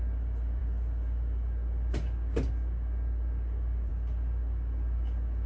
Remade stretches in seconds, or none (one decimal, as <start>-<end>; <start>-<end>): none